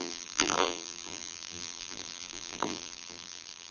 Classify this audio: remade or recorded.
remade